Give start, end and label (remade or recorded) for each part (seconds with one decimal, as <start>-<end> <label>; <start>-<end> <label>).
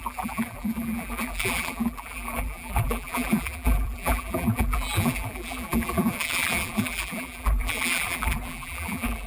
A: 0.0-9.3 remade